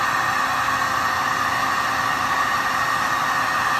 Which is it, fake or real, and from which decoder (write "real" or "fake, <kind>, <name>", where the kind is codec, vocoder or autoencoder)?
real